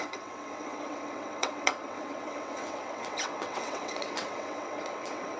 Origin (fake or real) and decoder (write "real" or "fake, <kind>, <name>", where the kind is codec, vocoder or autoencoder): fake, vocoder, WaveNeXt